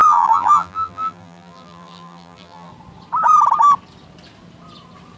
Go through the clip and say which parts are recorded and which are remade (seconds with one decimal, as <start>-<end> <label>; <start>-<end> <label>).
0.0-2.7 remade; 2.7-5.2 recorded